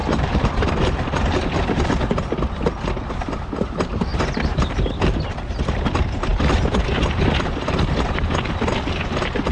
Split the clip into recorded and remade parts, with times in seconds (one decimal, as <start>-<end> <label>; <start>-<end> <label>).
0.0-0.6 remade; 0.6-4.1 recorded; 4.1-5.3 remade; 5.3-9.5 recorded